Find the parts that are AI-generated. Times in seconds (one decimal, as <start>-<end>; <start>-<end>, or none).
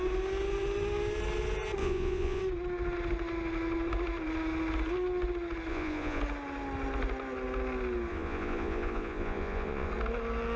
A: 1.8-2.4; 5.7-6.2; 8.1-9.9